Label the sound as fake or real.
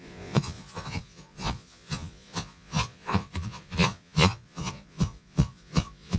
fake